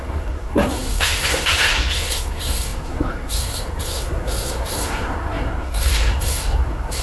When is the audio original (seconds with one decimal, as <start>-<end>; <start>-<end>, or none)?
none